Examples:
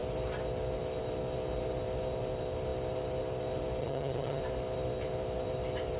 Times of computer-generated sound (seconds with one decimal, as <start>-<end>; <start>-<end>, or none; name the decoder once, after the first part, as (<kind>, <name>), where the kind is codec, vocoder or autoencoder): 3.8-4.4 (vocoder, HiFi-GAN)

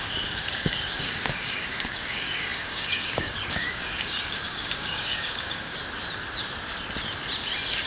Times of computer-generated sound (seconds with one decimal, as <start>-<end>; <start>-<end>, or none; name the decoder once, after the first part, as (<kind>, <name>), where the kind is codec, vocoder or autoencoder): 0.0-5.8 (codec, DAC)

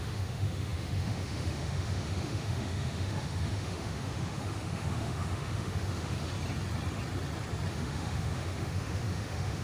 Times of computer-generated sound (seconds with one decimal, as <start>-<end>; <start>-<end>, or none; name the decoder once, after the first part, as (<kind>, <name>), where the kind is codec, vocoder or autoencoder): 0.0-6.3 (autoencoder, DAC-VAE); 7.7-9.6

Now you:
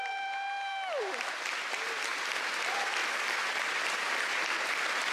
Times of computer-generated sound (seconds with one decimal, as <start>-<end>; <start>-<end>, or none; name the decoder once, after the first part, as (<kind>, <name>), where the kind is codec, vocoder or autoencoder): 0.0-0.7 (vocoder, BigVGAN v2); 1.5-2.1; 2.6-3.0; 3.7-5.1

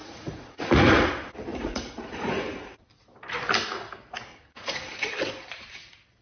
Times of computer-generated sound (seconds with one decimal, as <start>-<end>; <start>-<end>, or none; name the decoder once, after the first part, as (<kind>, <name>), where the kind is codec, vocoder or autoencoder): 0.0-1.1 (vocoder, Vocos); 1.5-2.9; 4.3-5.1

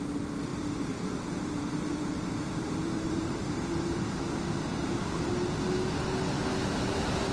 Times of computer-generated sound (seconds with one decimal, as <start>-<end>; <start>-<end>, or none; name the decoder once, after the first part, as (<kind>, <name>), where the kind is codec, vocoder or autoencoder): 0.5-4.1 (vocoder, BigVGAN v2); 4.8-5.3; 6.5-7.3

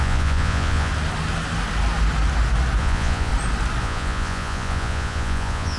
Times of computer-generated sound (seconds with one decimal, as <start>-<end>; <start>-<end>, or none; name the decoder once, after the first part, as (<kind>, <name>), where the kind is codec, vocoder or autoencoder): 0.0-0.9 (vocoder, Vocos); 2.8-3.3; 3.8-5.8